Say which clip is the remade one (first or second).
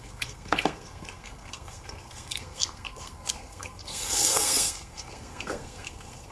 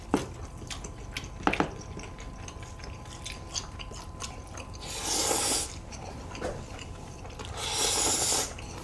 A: first